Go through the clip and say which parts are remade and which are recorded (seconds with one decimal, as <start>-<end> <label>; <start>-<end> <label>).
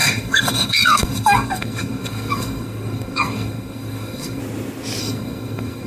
0.0-4.4 remade; 4.4-5.0 recorded; 5.0-5.9 remade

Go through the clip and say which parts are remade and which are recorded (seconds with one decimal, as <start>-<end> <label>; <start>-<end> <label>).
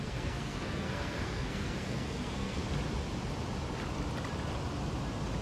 0.0-2.6 remade; 2.6-5.4 recorded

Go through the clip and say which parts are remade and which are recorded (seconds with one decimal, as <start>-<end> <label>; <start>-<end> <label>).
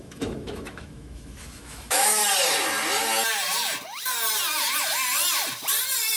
0.0-2.2 remade; 2.2-6.2 recorded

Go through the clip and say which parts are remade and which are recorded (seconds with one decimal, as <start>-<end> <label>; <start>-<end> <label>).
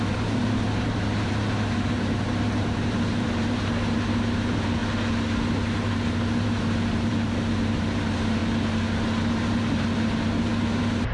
0.0-4.8 remade; 4.8-5.9 recorded; 5.9-8.4 remade; 8.4-9.3 recorded; 9.3-11.1 remade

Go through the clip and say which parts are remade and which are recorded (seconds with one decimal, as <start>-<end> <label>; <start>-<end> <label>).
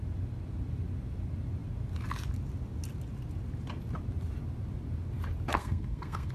0.0-5.6 recorded; 5.6-6.3 remade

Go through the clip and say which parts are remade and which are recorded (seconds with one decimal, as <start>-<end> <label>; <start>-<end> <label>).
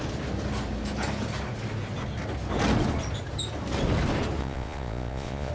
0.0-4.4 recorded; 4.4-5.5 remade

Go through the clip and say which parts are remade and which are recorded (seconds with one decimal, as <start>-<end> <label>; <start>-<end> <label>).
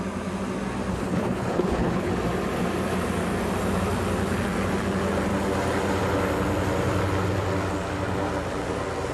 0.0-0.9 recorded; 0.9-2.1 remade; 2.1-9.1 recorded